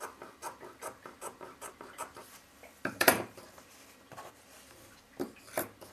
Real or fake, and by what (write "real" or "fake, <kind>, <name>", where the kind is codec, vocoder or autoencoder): fake, vocoder, BigVGAN v2